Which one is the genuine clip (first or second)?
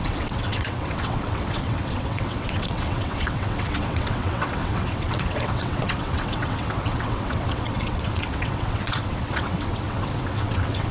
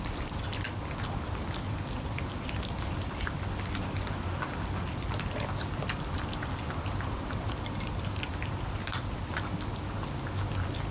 second